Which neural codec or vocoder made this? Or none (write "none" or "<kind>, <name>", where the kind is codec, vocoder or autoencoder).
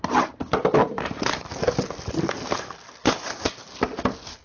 none